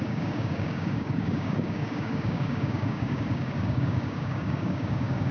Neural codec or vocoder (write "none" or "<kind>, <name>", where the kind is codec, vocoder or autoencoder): codec, DAC